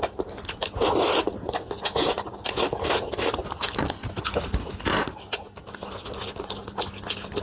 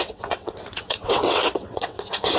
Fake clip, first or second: second